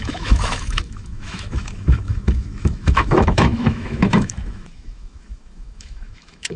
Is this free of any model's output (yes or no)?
no